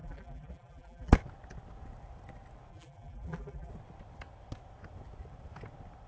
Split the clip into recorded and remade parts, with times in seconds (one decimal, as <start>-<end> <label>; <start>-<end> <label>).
0.0-1.1 remade; 1.1-2.7 recorded; 2.7-3.7 remade; 3.7-6.1 recorded